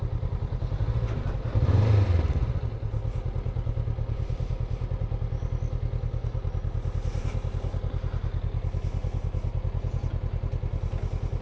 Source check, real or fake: real